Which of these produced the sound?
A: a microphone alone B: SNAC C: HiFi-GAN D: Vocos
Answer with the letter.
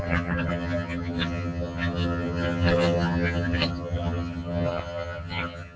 C